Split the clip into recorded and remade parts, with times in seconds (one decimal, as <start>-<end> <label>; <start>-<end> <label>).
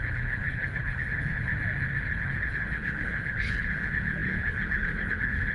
0.0-1.5 remade; 1.5-2.1 recorded; 2.1-5.5 remade